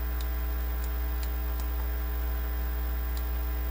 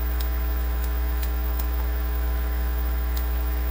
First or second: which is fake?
second